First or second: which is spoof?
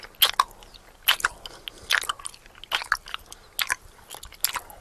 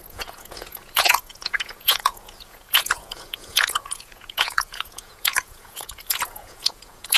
second